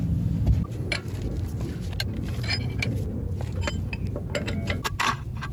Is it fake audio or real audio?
real